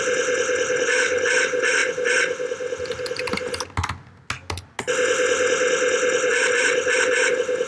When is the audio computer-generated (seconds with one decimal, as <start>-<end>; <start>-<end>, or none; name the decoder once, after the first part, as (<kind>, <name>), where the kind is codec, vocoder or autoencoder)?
none

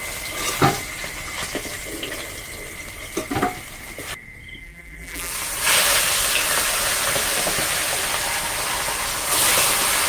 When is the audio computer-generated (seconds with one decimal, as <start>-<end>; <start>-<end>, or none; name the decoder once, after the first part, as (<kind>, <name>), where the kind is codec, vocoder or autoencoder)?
4.6-5.3 (vocoder, BigVGAN v2)

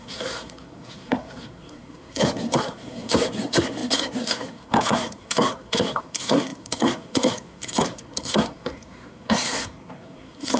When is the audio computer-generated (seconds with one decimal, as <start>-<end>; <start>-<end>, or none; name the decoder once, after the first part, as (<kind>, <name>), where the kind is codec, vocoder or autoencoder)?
0.0-10.6 (codec, SNAC)

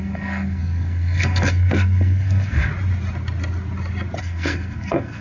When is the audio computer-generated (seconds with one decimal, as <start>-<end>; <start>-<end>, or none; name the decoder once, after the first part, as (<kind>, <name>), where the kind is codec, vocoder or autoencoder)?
0.0-2.7 (codec, SNAC); 4.2-5.2

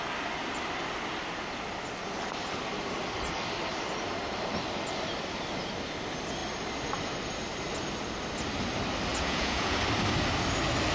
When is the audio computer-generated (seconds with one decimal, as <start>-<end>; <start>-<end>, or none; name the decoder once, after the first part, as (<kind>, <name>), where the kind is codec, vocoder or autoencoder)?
9.1-9.8 (vocoder, Vocos)

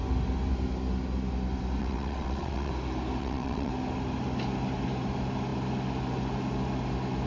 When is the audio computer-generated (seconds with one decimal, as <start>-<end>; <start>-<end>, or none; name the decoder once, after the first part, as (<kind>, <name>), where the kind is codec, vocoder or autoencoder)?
1.8-2.7 (vocoder, WaveNeXt); 3.2-3.7